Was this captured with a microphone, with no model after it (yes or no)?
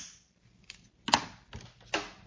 yes